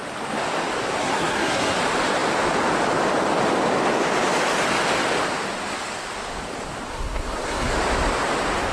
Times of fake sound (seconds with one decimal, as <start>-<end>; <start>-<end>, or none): 1.0-1.8; 6.9-7.7